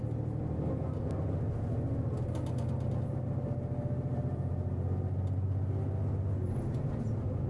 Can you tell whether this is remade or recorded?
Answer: recorded